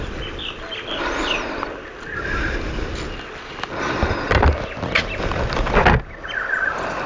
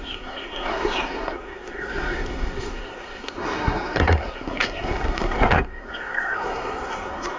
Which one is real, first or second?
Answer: first